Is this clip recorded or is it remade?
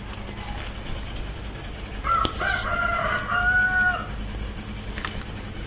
recorded